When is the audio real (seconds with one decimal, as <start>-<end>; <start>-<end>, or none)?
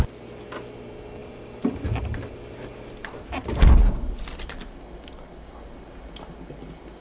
0.0-7.0